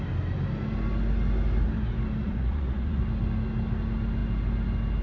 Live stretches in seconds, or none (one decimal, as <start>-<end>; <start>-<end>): 0.0-2.2; 3.0-5.0